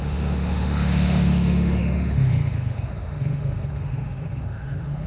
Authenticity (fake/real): fake